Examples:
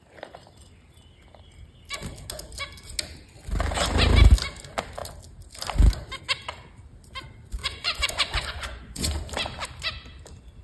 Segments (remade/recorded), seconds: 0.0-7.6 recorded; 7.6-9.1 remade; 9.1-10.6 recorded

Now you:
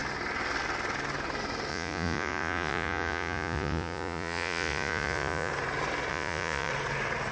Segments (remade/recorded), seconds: 0.0-1.7 recorded; 1.7-5.5 remade; 5.5-6.1 recorded; 6.1-6.7 remade; 6.7-7.3 recorded

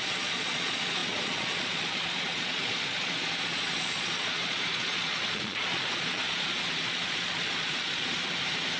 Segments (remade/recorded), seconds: 0.0-8.2 remade; 8.2-8.8 recorded

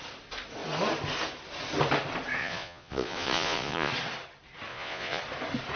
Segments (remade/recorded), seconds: 0.0-2.4 recorded; 2.4-3.9 remade; 3.9-4.7 recorded; 4.7-5.2 remade; 5.2-5.8 recorded